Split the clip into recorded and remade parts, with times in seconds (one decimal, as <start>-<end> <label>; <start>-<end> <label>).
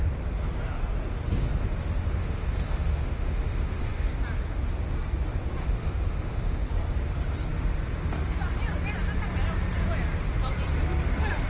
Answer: 0.0-2.2 recorded; 2.2-4.1 remade; 4.1-5.6 recorded; 5.6-6.7 remade; 6.7-11.5 recorded